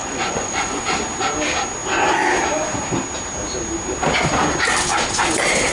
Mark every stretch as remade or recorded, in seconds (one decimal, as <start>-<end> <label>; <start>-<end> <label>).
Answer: 0.0-0.8 remade; 0.8-5.7 recorded

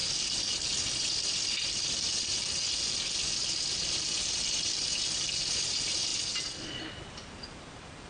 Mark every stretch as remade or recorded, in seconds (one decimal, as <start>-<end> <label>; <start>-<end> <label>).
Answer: 0.0-2.3 remade; 2.3-4.3 recorded; 4.3-8.1 remade